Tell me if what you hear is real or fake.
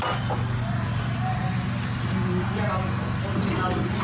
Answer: real